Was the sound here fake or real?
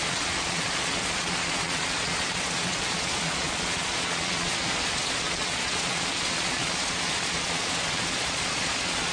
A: fake